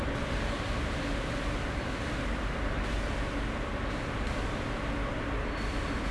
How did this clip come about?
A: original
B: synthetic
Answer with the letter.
A